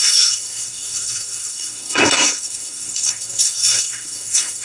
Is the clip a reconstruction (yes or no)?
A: yes